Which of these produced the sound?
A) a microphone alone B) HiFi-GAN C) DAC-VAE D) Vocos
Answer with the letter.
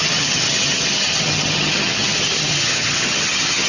B